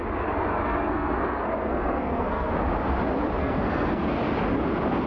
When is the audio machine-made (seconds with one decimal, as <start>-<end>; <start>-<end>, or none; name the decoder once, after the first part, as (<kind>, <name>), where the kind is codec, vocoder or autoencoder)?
0.5-2.5 (codec, SNAC); 3.4-4.1